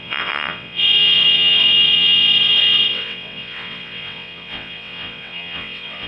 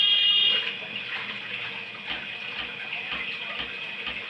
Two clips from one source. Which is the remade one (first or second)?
first